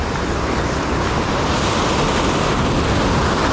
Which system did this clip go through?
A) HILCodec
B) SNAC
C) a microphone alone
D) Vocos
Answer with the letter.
C